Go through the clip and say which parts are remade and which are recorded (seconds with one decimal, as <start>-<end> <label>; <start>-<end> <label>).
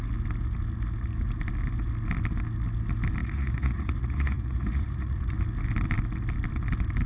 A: 0.0-3.2 recorded; 3.2-5.3 remade; 5.3-7.1 recorded